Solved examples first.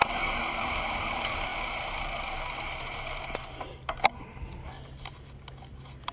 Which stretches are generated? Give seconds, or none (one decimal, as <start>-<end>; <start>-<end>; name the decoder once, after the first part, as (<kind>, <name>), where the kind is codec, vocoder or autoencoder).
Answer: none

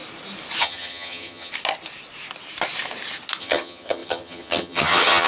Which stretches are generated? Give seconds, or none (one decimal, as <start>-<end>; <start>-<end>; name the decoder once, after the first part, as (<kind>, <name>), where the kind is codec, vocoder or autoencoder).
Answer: 0.6-1.5 (vocoder, HiFi-GAN); 3.4-5.3

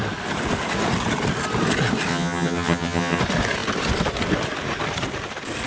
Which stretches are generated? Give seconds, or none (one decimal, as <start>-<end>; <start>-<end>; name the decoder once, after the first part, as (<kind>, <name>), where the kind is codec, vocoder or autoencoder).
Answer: 2.1-3.2 (vocoder, HiFi-GAN)

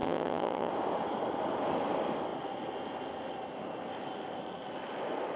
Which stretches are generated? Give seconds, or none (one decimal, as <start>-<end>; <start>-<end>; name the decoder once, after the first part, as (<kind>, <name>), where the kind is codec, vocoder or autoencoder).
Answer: 0.0-0.7 (vocoder, HiFi-GAN)

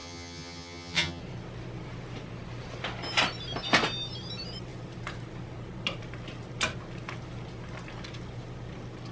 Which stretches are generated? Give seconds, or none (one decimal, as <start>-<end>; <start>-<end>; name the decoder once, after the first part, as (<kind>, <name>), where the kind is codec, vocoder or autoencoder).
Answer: 0.0-1.2 (vocoder, HiFi-GAN)